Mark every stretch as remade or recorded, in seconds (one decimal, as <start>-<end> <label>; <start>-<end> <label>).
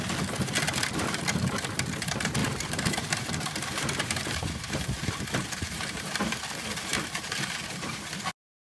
0.0-2.4 recorded; 2.4-6.2 remade; 6.2-6.9 recorded; 6.9-8.1 remade; 8.1-8.8 recorded